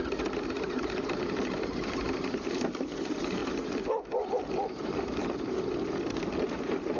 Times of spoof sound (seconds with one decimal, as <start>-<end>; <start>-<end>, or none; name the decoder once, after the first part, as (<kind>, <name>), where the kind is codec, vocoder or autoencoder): 0.0-3.4 (vocoder, BigVGAN v2); 4.3-5.2; 6.5-7.0